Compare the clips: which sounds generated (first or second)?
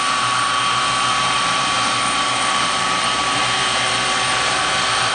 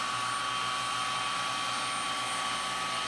first